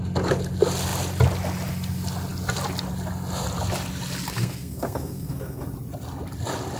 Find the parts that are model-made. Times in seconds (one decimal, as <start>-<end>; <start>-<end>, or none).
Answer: 4.3-5.6